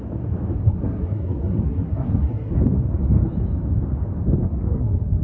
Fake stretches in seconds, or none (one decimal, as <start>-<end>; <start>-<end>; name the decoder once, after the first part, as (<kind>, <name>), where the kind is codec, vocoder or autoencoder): 0.7-2.5 (codec, SNAC); 4.4-5.2